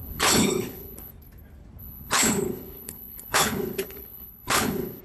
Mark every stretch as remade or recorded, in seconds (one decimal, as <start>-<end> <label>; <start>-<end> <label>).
0.0-1.1 remade; 1.1-1.8 recorded; 1.8-5.0 remade